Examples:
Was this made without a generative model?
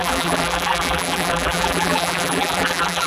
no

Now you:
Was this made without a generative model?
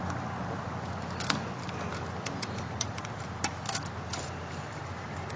yes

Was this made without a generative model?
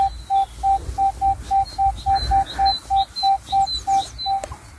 yes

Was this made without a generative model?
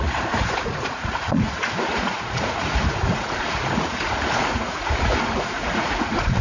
no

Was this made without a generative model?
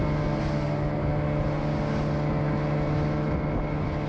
yes